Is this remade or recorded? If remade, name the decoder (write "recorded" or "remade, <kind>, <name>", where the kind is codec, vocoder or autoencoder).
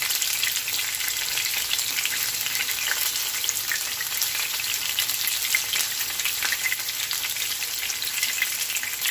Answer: recorded